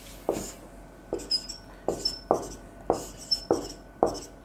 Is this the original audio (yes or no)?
yes